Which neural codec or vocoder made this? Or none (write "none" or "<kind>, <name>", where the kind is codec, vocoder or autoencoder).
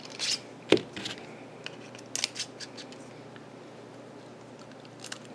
none